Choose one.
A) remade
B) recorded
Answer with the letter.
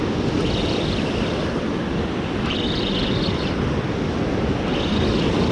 B